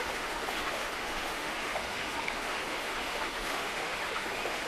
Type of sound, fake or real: fake